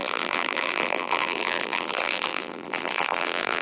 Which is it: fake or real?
fake